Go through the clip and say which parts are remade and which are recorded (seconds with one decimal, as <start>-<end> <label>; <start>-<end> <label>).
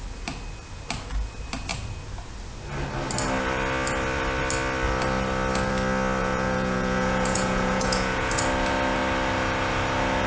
0.0-6.2 recorded; 6.2-8.3 remade; 8.3-10.3 recorded